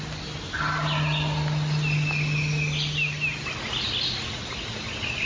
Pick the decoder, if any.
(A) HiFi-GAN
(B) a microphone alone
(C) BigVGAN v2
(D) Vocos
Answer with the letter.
B